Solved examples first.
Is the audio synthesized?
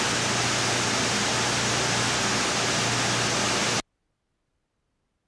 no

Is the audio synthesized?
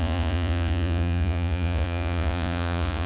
yes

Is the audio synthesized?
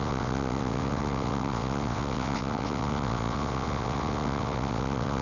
yes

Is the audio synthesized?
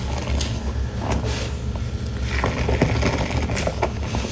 no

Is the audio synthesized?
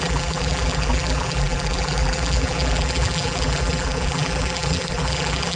yes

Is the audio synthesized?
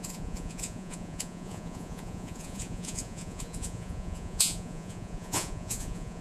yes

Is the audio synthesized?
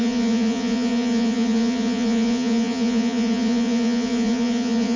yes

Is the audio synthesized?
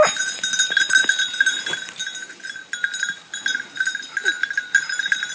no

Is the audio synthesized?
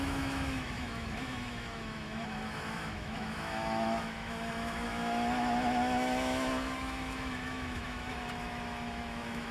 yes